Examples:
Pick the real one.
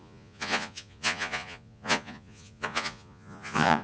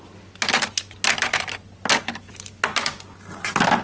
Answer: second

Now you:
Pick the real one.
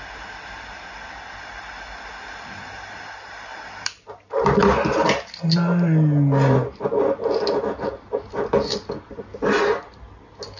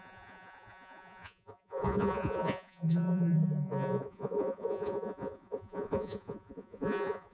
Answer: first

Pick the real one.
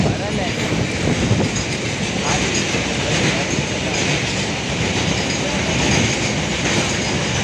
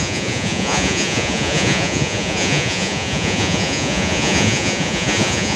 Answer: first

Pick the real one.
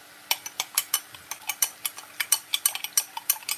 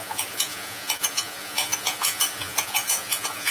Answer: first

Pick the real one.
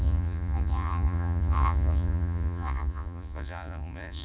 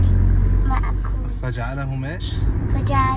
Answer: second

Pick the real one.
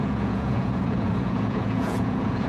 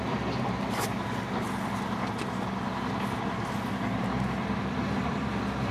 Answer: second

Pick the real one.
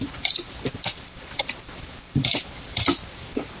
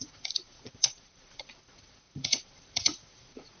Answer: first